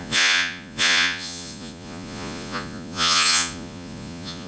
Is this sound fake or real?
fake